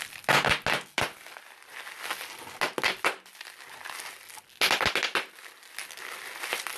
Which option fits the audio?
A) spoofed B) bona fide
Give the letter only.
B